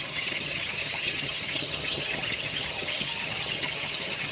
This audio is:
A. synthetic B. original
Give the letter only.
A